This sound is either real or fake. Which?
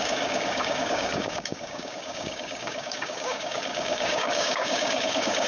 fake